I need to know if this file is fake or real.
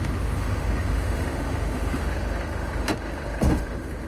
fake